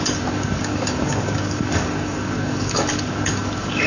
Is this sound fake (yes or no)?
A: yes